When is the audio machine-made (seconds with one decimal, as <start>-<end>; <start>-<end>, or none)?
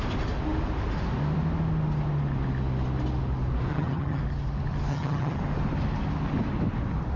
3.7-4.2; 4.9-5.4